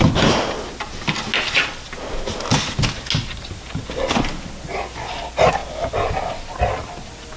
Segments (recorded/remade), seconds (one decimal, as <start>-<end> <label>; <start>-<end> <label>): 0.0-7.4 recorded